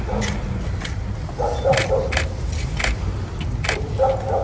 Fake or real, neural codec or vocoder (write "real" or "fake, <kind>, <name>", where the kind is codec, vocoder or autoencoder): real